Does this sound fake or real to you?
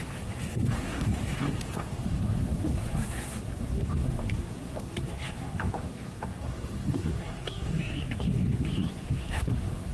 fake